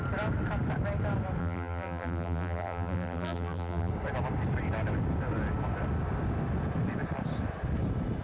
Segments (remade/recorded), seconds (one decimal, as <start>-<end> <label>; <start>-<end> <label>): 0.0-1.4 recorded; 1.4-3.9 remade; 3.9-8.2 recorded